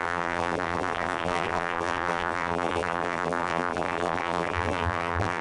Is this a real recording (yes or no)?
no